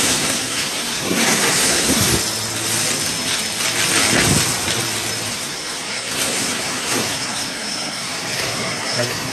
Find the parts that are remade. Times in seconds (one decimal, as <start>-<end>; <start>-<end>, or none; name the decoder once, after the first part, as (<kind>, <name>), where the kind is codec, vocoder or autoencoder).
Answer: 0.0-2.1 (codec, SNAC); 5.3-9.3